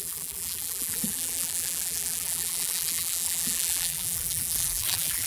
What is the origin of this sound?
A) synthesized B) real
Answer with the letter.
A